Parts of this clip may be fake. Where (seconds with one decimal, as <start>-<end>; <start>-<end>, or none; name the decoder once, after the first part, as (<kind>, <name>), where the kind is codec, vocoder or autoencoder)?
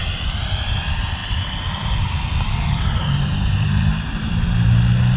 0.0-0.6 (vocoder, BigVGAN v2); 1.2-4.3